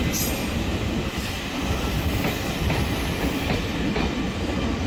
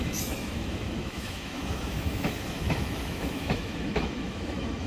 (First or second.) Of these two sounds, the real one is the first